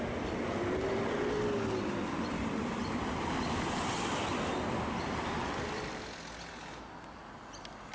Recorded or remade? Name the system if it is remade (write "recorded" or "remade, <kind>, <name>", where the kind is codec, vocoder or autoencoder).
recorded